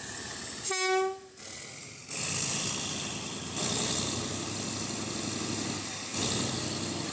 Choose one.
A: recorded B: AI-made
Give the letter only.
A